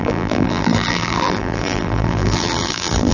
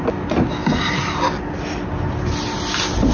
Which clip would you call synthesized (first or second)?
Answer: first